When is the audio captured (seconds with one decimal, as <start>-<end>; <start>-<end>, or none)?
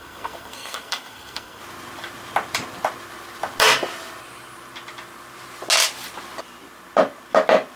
1.6-7.8